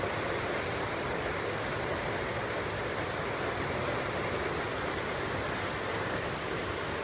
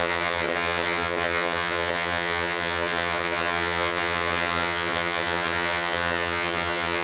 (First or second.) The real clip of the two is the first